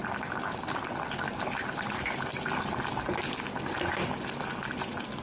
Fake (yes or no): no